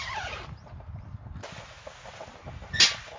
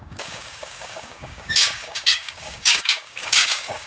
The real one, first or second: first